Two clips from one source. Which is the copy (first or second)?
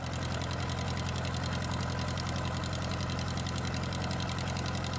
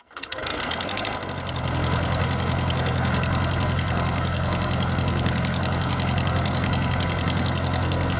second